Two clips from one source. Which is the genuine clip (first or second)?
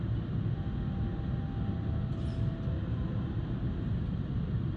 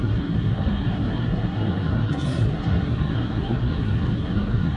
first